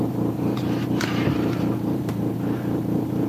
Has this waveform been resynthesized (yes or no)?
yes